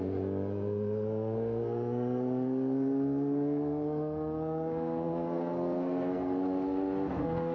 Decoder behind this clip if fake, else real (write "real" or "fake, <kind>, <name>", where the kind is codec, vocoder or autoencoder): fake, codec, SNAC